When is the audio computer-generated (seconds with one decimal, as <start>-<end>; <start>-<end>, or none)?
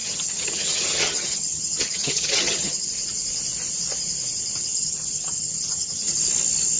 0.0-2.9; 4.7-6.2